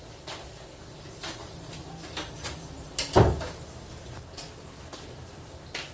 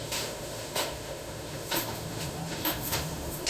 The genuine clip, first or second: first